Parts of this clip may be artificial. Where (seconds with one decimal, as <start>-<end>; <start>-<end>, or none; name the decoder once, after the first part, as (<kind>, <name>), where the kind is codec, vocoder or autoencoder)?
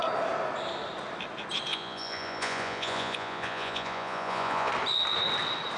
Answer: 1.7-4.7 (vocoder, Vocos)